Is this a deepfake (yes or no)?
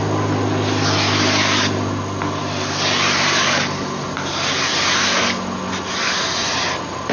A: no